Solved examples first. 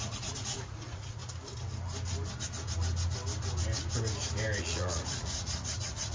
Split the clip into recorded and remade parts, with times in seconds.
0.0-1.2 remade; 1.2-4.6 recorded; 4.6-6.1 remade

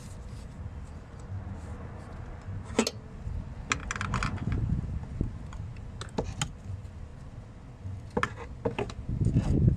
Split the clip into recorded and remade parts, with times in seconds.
0.0-7.1 recorded; 7.1-7.7 remade; 7.7-9.8 recorded

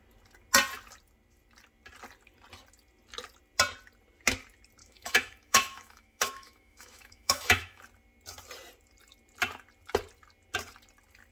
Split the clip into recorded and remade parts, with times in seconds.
0.0-4.8 recorded; 4.8-7.8 remade; 7.8-11.3 recorded

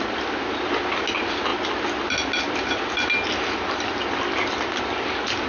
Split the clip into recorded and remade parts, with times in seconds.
0.0-5.5 recorded